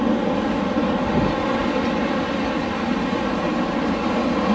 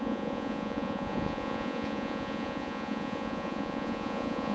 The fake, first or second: second